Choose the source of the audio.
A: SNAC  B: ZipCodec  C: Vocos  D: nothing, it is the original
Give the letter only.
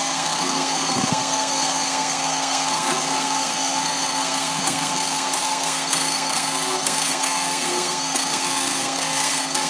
A